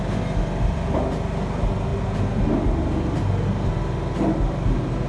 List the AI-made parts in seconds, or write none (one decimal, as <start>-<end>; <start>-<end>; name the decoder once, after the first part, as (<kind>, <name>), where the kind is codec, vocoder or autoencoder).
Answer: none